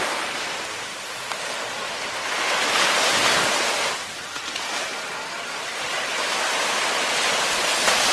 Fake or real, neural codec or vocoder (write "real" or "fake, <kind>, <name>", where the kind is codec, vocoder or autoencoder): real